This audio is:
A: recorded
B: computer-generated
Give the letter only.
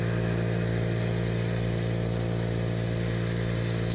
A